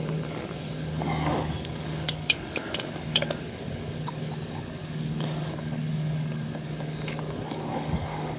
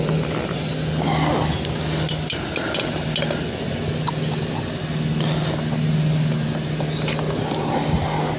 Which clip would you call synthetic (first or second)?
first